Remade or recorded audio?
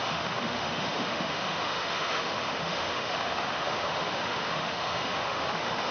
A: remade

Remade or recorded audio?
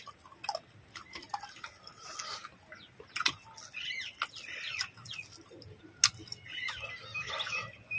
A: recorded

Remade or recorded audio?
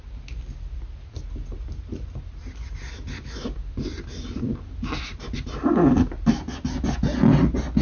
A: recorded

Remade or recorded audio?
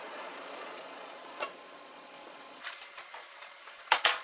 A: remade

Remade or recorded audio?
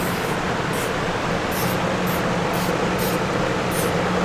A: recorded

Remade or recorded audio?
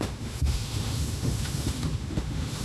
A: remade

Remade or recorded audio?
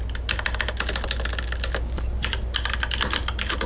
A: recorded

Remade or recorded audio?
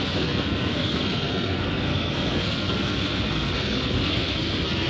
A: remade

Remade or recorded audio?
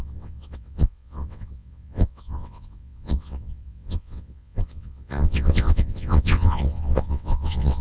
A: remade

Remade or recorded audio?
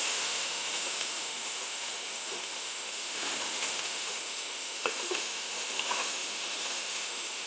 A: remade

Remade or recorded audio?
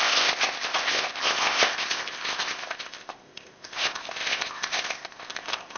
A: remade